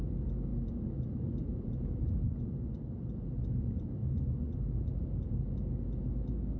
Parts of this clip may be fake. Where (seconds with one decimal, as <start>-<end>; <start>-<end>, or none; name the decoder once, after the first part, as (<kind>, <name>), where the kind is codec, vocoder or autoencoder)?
0.0-4.0 (vocoder, BigVGAN v2)